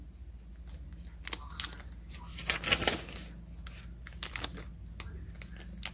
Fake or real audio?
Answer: real